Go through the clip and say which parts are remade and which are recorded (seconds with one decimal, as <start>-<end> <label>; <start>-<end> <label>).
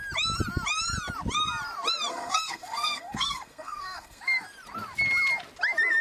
0.0-2.1 recorded; 2.1-4.2 remade; 4.2-6.0 recorded